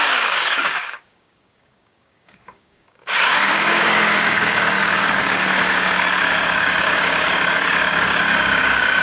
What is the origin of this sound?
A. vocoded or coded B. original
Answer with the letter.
A